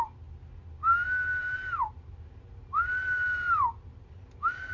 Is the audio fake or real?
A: real